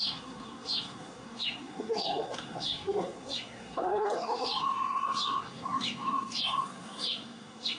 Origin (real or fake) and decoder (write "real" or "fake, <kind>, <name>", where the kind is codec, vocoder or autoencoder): fake, codec, SNAC